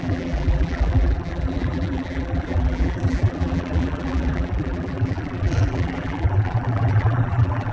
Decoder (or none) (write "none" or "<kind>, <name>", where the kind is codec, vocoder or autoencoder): vocoder, BigVGAN v2